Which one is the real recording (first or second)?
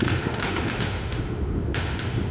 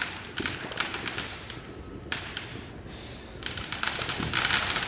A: second